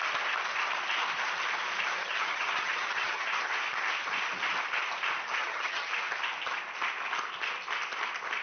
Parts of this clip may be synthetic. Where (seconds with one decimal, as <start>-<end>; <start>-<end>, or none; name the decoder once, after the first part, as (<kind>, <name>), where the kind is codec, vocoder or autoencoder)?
2.0-3.4 (vocoder, HiFi-GAN); 5.4-5.9

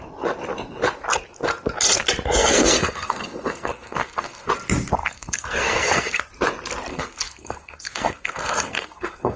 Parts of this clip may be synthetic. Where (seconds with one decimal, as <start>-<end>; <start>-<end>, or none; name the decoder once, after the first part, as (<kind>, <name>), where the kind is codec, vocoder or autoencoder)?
2.4-4.5 (codec, SNAC); 5.0-6.2; 6.9-9.4

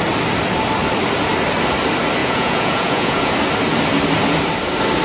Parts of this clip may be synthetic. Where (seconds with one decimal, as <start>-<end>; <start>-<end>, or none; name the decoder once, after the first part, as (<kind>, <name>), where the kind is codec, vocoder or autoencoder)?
2.2-3.3 (vocoder, Vocos)

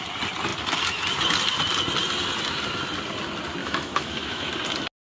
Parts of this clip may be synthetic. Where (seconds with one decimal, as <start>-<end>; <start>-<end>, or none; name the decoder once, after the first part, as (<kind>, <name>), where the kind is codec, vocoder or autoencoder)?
3.6-4.5 (autoencoder, DAC-VAE)

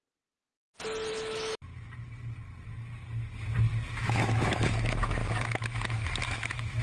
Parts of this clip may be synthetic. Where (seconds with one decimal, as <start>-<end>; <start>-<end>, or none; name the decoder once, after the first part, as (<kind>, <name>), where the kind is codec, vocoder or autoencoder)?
1.1-1.7 (autoencoder, DAC-VAE); 3.9-6.8

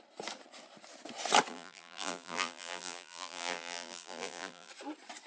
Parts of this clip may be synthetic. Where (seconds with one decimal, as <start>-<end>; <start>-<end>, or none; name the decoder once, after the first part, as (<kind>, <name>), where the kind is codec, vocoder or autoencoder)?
1.5-4.7 (vocoder, BigVGAN v2)

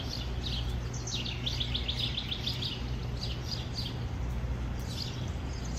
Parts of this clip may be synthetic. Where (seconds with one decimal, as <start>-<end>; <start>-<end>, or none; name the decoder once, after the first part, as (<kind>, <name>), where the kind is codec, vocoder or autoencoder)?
none